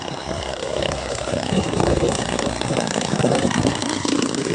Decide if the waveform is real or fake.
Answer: fake